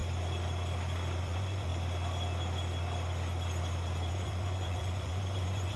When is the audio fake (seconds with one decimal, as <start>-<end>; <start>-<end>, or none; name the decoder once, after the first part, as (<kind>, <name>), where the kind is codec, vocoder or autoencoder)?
1.2-1.7 (vocoder, Vocos); 4.1-5.8